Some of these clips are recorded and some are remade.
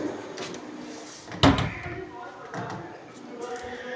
recorded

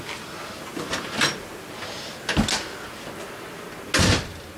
recorded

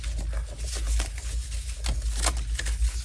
recorded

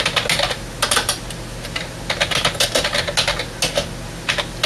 recorded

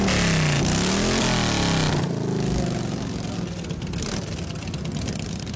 recorded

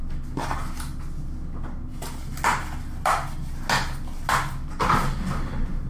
recorded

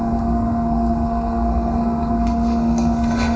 remade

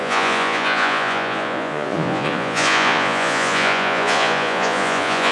remade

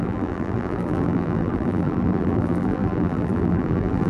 remade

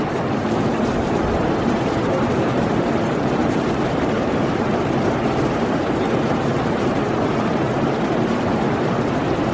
remade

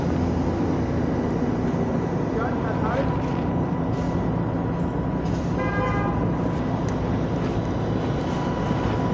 recorded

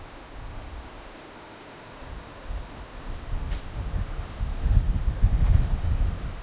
remade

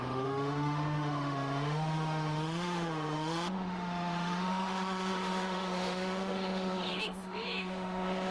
remade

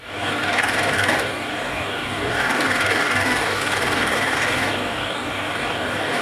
remade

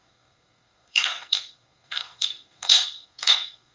remade